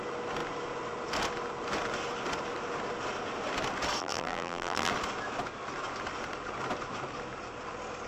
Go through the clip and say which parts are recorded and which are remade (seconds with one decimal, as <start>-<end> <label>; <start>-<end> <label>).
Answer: 0.0-4.0 recorded; 4.0-4.9 remade; 4.9-8.1 recorded